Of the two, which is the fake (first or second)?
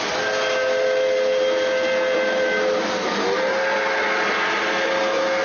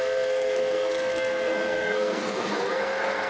second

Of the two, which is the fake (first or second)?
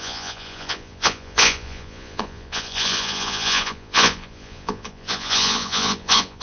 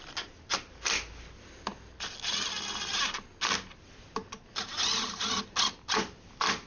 first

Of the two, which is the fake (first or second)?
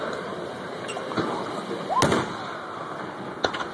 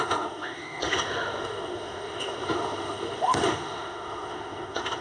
second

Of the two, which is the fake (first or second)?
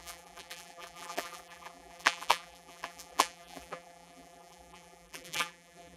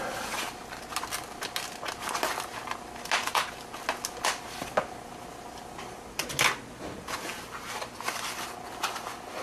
first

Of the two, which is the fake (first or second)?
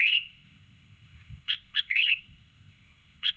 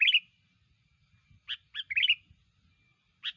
first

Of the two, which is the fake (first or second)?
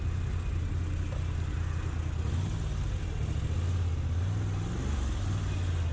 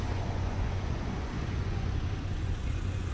second